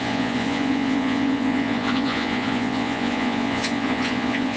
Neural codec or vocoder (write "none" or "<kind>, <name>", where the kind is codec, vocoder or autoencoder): vocoder, Vocos